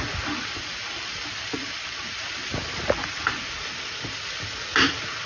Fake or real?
real